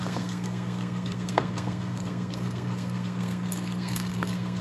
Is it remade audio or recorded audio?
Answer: remade